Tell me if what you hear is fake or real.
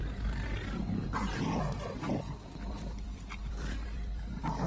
real